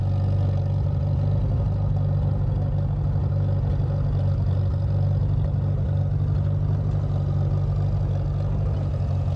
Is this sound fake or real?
real